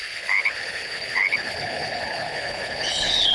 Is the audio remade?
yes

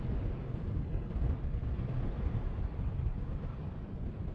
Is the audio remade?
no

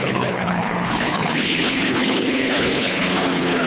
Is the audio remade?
yes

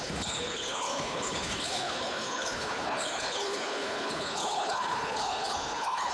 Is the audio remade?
yes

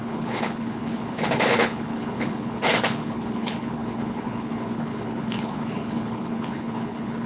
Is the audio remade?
yes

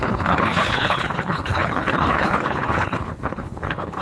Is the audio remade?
yes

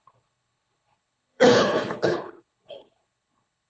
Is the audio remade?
yes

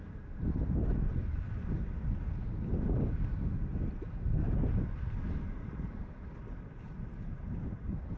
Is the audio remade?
no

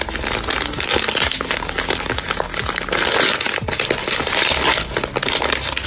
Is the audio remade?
no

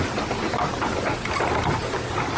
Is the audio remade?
no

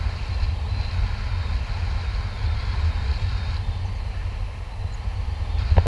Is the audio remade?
no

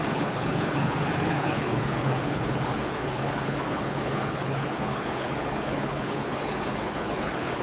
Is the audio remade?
yes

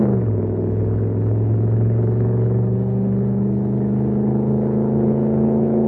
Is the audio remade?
yes